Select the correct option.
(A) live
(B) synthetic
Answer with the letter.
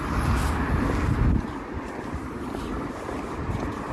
A